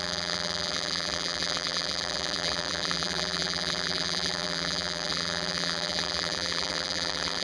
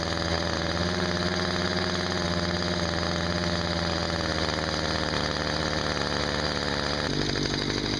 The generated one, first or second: first